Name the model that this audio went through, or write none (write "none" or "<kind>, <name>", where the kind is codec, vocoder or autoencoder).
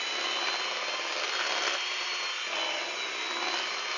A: none